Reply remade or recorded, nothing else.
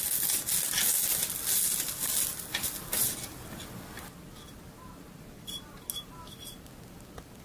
recorded